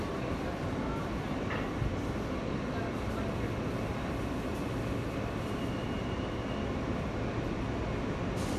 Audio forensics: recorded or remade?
recorded